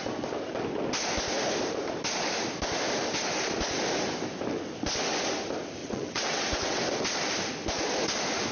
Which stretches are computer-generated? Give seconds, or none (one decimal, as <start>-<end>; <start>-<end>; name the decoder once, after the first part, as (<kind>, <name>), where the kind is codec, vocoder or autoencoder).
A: 5.8-6.8 (vocoder, WaveNeXt)